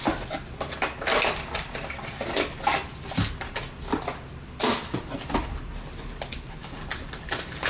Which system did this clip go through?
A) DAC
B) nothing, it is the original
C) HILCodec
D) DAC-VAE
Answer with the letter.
B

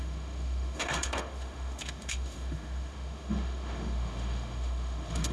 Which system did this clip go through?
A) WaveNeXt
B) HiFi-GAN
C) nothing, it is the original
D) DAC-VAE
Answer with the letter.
D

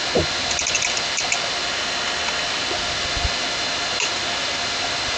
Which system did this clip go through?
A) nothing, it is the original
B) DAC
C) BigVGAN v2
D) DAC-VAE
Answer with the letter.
A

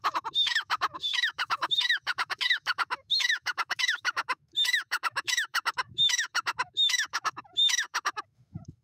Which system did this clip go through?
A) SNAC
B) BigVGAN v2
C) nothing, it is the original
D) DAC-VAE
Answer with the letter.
D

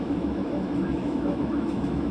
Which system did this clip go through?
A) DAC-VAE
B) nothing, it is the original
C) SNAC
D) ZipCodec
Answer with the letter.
A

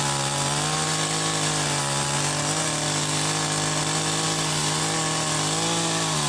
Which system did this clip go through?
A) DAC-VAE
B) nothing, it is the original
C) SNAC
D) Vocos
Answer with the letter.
B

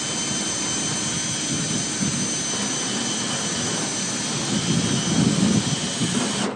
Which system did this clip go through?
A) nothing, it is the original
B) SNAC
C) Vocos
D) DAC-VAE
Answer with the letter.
A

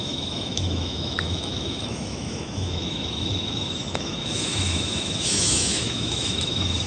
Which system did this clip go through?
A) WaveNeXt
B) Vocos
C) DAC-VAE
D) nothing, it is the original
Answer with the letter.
C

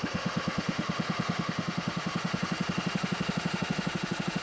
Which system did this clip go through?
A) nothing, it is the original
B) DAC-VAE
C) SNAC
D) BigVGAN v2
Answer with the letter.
B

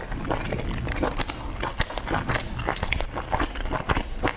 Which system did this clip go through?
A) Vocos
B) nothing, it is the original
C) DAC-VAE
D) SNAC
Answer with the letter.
B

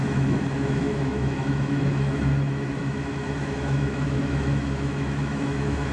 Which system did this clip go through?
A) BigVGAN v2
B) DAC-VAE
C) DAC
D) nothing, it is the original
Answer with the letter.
B